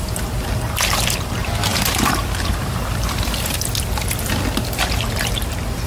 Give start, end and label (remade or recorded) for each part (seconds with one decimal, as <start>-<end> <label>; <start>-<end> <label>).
0.0-1.7 recorded; 1.7-5.2 remade; 5.2-5.9 recorded